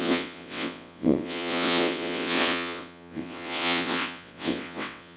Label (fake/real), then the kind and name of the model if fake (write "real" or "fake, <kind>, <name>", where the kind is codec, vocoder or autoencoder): fake, vocoder, WaveNeXt